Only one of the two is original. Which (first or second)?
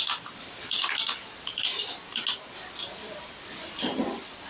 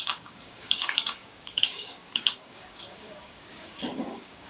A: first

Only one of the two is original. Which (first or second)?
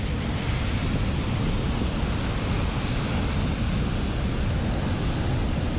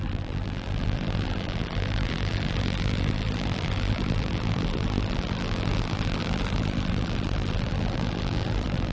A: first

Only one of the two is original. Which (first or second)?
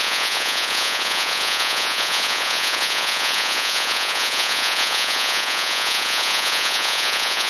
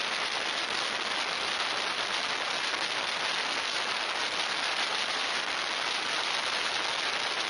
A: second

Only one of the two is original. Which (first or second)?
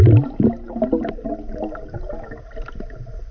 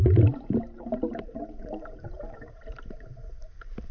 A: first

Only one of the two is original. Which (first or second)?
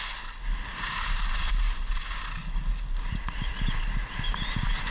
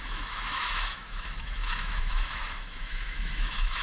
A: first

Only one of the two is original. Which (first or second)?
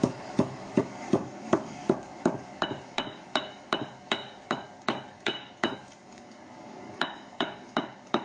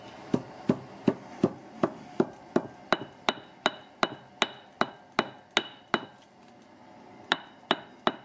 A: second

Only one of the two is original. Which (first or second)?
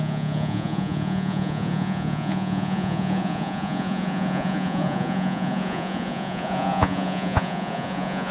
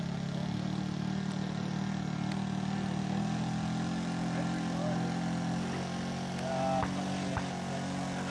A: second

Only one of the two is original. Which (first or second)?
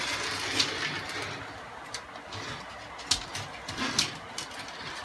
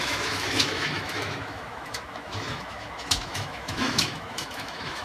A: first